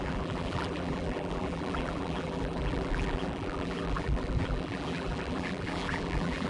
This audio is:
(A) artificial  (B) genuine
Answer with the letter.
A